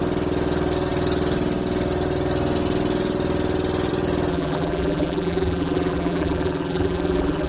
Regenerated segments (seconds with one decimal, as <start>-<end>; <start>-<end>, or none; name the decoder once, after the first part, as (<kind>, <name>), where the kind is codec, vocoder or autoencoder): 4.3-7.5 (vocoder, BigVGAN v2)